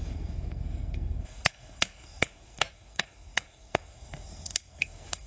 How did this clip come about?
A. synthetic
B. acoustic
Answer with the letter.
A